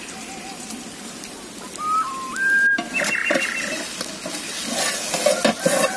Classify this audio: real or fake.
real